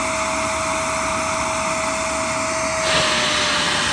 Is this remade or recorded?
recorded